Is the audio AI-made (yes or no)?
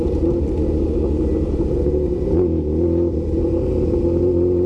no